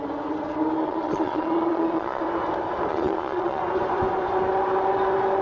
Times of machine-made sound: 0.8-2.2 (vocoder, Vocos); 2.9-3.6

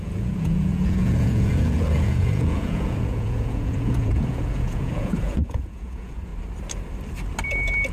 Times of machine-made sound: 0.0-6.3 (vocoder, Vocos)

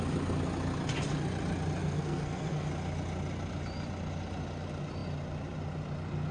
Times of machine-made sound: 1.8-2.7 (codec, SNAC)

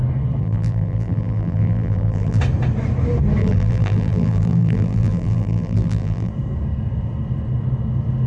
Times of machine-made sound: 0.4-2.4 (vocoder, BigVGAN v2); 3.4-6.3

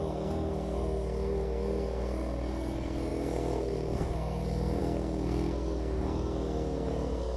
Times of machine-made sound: 0.0-7.4 (codec, SNAC)